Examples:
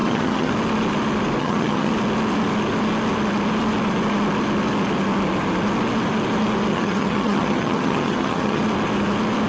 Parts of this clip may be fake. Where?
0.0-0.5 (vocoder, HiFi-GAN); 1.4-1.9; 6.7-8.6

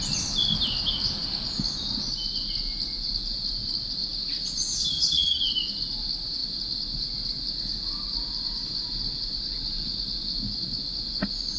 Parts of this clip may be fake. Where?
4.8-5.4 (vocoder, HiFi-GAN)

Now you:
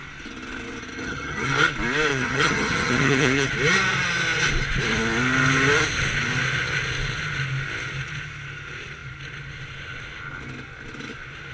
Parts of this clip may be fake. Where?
0.9-1.5 (vocoder, HiFi-GAN); 2.1-3.5

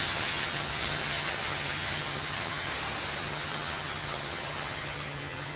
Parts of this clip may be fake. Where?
0.0-2.7 (vocoder, HiFi-GAN); 3.2-5.6

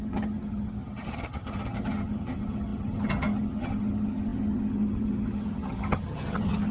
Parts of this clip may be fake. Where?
0.0-6.7 (vocoder, HiFi-GAN)

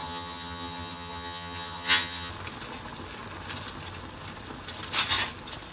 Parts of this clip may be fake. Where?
0.0-2.3 (vocoder, HiFi-GAN)

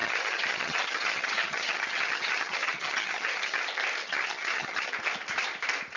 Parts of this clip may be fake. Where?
0.0-3.6 (vocoder, HiFi-GAN); 4.0-4.9